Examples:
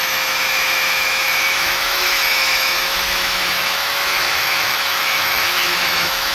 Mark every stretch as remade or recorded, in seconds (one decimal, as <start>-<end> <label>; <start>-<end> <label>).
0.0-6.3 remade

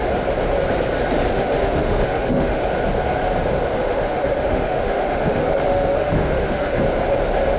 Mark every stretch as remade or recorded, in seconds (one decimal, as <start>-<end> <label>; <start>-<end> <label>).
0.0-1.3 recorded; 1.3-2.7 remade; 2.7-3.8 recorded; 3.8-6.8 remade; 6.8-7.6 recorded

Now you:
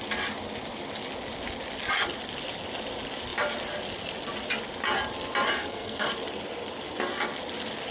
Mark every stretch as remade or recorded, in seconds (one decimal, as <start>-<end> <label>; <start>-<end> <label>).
0.0-5.6 recorded; 5.6-6.1 remade; 6.1-7.9 recorded

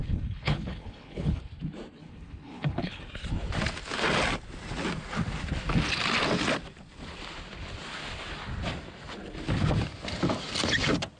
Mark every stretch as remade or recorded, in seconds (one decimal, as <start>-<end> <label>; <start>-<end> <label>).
0.0-1.4 remade; 1.4-2.0 recorded; 2.0-3.0 remade; 3.0-11.2 recorded

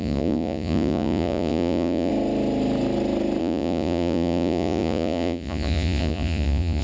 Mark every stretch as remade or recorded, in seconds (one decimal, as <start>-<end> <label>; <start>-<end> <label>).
0.0-2.1 remade; 2.1-3.4 recorded; 3.4-6.8 remade

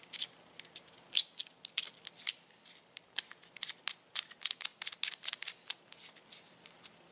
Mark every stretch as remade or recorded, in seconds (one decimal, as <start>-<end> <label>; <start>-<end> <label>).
0.0-7.1 recorded